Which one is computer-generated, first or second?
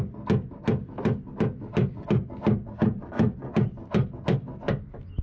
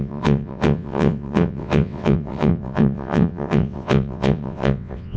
second